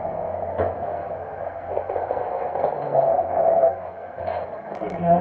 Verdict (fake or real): fake